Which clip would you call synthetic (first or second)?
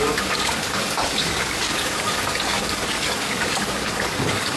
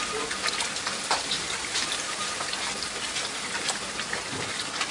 first